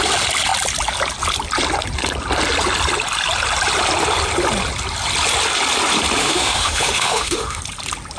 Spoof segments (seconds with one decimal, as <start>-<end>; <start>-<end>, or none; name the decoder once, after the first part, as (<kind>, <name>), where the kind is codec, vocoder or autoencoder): 6.2-7.6 (autoencoder, DAC-VAE)